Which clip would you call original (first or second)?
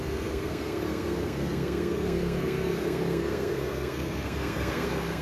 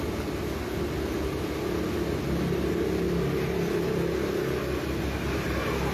second